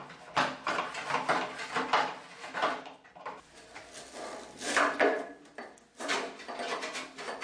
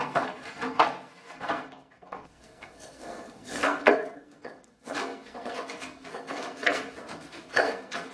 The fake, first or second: second